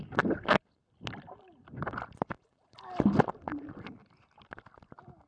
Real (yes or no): yes